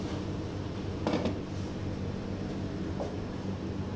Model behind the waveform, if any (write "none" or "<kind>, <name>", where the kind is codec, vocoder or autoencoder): none